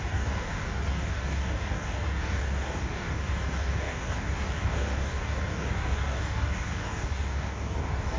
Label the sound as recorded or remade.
remade